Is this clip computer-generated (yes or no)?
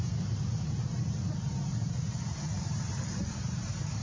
yes